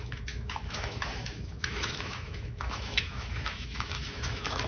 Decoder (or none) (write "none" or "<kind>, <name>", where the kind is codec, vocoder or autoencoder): autoencoder, DAC-VAE